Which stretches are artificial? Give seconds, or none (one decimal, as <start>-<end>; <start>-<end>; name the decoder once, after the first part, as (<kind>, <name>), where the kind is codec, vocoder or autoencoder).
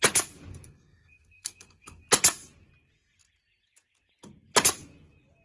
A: 0.5-2.0 (codec, SNAC)